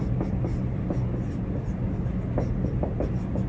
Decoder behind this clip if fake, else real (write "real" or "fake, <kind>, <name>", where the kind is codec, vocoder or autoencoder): real